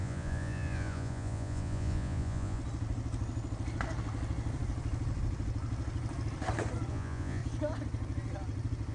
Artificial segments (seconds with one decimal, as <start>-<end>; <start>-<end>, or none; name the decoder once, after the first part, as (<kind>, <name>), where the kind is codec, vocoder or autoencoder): 0.0-2.6 (vocoder, Vocos); 6.9-7.4